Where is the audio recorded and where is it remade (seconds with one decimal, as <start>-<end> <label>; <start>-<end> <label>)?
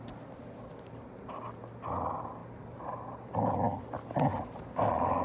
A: 0.0-2.4 recorded; 2.4-3.3 remade; 3.3-4.3 recorded; 4.3-4.8 remade; 4.8-5.2 recorded